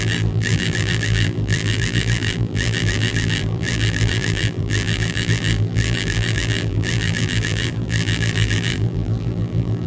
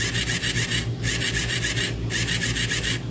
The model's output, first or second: first